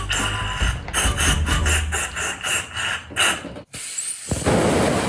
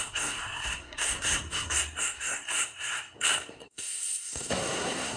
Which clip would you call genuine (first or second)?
first